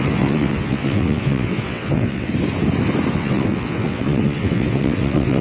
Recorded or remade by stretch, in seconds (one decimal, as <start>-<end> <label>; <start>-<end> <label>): 0.0-2.3 remade; 2.3-3.1 recorded; 3.1-5.4 remade